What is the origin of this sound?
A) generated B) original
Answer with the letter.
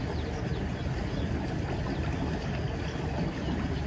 B